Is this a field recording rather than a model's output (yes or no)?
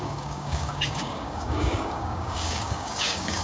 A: no